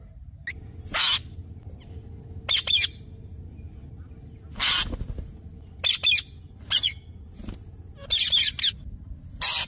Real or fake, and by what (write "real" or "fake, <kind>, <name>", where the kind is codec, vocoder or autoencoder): real